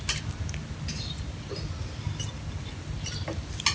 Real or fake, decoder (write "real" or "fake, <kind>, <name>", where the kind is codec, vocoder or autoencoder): real